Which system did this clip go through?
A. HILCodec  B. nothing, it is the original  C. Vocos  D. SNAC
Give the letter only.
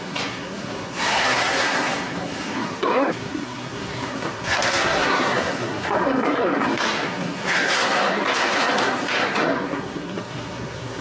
D